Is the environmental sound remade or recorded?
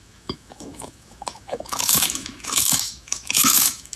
remade